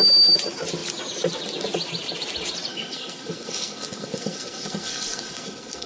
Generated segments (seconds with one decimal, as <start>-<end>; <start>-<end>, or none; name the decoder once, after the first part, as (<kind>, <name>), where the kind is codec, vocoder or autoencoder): 2.7-5.9 (codec, SNAC)